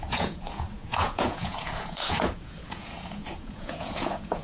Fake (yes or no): yes